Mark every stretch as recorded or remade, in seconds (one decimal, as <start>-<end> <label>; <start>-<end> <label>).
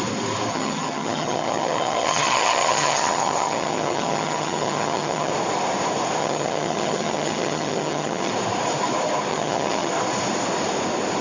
0.0-0.5 recorded; 0.5-5.3 remade; 5.3-6.2 recorded; 6.2-8.3 remade; 8.3-9.3 recorded; 9.3-9.9 remade; 9.9-11.2 recorded